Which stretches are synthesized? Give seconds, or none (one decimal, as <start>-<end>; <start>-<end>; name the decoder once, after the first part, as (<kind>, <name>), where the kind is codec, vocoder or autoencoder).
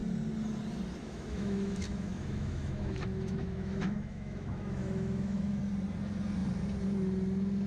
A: 1.0-5.6 (autoencoder, DAC-VAE)